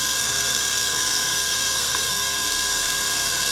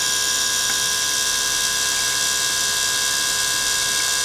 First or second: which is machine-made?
first